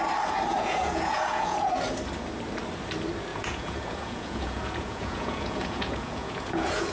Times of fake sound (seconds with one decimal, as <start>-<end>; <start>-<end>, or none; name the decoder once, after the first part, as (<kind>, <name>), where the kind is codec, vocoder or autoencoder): 0.5-1.8 (vocoder, Vocos); 3.3-6.9